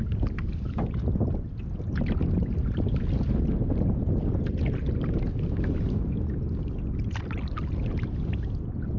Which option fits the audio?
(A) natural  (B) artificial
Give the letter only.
A